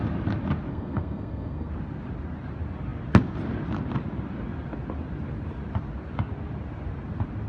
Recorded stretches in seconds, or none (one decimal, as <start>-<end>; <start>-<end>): 0.0-0.7; 1.7-7.5